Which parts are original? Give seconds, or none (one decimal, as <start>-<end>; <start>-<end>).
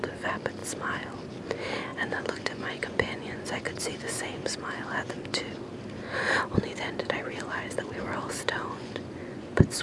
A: 0.0-1.9; 4.7-7.0; 7.6-8.6